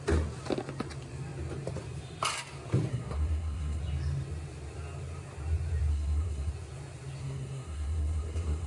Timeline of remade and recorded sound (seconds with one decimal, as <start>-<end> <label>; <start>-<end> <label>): 0.0-2.9 recorded; 2.9-3.8 remade; 3.8-5.9 recorded; 5.9-6.5 remade; 6.5-7.2 recorded; 7.2-8.7 remade